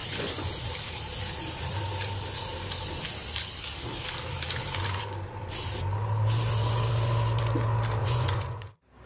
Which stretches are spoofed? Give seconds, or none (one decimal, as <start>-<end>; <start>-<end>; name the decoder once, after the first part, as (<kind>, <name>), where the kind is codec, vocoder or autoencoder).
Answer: 0.0-0.5 (vocoder, Vocos); 8.0-8.7